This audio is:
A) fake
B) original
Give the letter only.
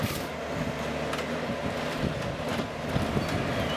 B